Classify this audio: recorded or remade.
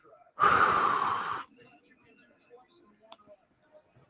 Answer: recorded